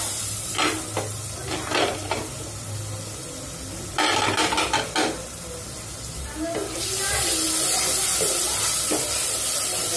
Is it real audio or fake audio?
real